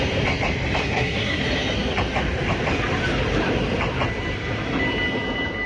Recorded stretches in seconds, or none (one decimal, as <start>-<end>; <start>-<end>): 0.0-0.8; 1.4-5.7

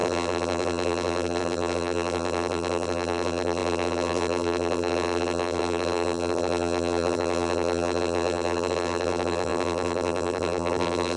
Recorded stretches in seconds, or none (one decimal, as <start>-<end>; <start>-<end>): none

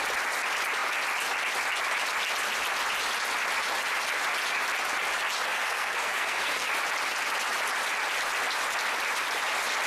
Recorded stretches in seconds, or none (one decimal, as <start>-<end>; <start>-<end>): 0.0-5.5; 6.7-9.9